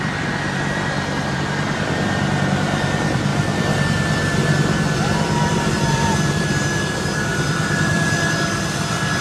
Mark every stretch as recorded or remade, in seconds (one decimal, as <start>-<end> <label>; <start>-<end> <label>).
0.0-9.2 remade